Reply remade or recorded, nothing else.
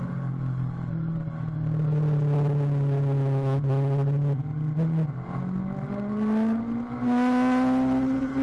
recorded